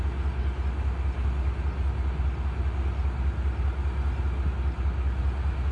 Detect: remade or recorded recorded